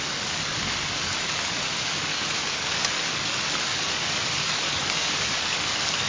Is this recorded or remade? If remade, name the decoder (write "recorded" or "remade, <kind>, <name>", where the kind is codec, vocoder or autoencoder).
remade, codec, DAC